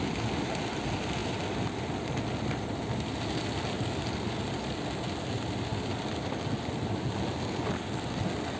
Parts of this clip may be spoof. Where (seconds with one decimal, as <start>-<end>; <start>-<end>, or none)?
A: none